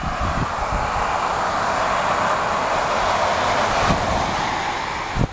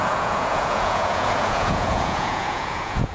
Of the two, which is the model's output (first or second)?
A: second